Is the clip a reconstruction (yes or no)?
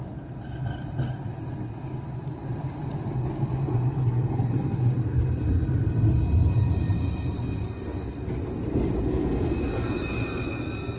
no